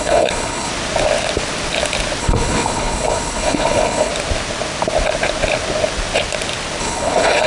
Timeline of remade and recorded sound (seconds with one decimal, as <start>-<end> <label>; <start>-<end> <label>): 0.0-0.7 remade; 0.7-2.2 recorded; 2.2-4.1 remade; 4.1-6.8 recorded; 6.8-7.5 remade